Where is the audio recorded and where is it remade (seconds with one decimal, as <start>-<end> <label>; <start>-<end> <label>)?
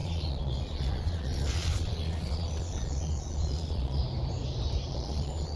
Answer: 0.0-4.0 remade; 4.0-4.9 recorded; 4.9-5.6 remade